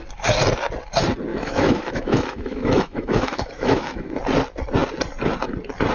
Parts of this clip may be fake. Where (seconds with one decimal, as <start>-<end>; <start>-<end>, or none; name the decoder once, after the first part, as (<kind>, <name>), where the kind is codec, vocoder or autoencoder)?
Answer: 1.3-4.2 (autoencoder, DAC-VAE)